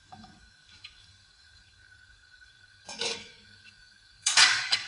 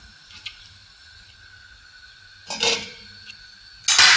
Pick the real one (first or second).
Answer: second